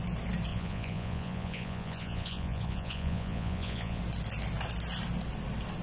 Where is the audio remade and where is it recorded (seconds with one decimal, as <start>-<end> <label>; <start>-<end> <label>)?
0.0-0.5 recorded; 0.5-4.0 remade; 4.0-5.8 recorded